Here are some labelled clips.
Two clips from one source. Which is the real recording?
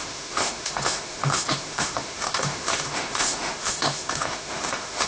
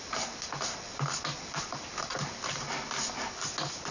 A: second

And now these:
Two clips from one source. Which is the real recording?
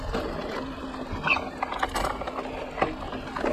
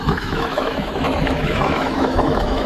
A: first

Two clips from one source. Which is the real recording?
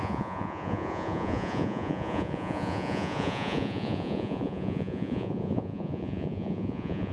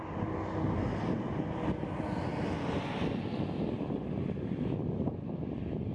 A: second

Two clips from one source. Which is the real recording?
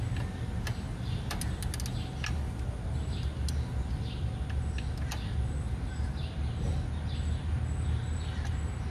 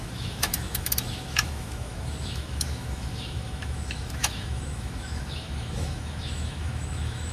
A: first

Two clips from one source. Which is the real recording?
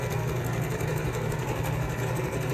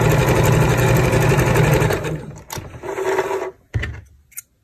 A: second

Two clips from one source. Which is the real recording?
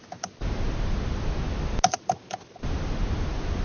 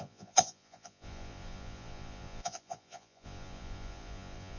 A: first